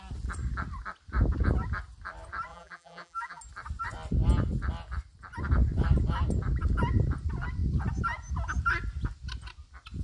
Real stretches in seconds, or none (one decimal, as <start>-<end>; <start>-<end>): 0.0-2.5; 3.4-10.0